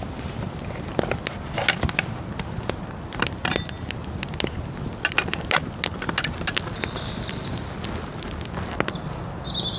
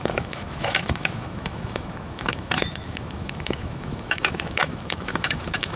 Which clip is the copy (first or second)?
second